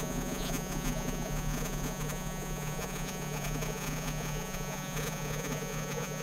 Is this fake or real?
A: fake